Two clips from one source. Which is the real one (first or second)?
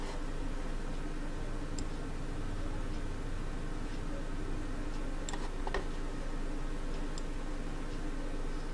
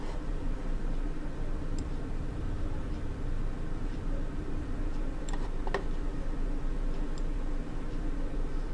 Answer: first